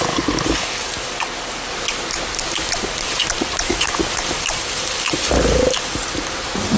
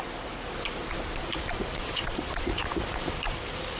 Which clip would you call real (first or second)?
first